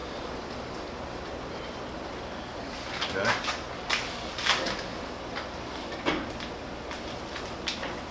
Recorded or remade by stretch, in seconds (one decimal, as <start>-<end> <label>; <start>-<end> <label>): 0.0-8.1 recorded